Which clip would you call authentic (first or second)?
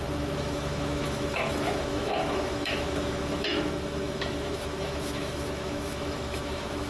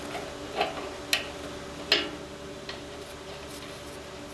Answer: second